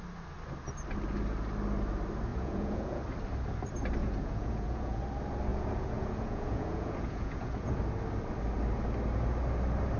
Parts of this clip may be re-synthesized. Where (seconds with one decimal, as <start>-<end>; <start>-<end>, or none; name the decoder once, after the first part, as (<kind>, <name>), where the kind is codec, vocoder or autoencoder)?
2.3-3.0 (vocoder, Vocos); 4.0-5.0; 5.5-7.8